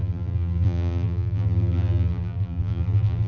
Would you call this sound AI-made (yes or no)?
yes